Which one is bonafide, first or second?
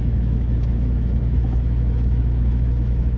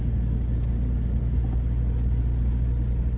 second